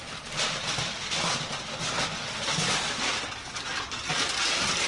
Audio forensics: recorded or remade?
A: recorded